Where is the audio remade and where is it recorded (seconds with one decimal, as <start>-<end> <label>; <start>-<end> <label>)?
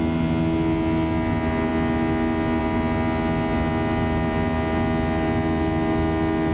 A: 0.0-6.5 recorded